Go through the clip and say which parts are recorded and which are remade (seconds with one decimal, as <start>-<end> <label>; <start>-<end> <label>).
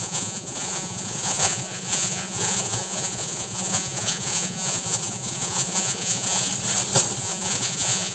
0.0-6.5 remade; 6.5-7.2 recorded; 7.2-8.1 remade